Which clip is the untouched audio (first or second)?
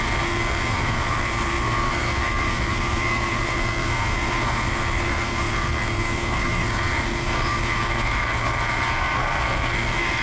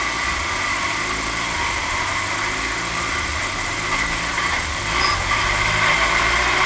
second